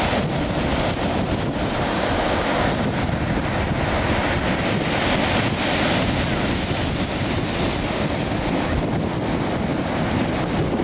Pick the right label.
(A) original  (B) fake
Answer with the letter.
A